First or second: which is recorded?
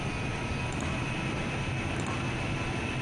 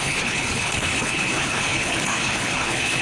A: first